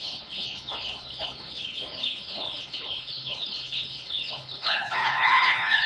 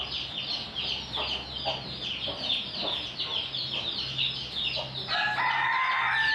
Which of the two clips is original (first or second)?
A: second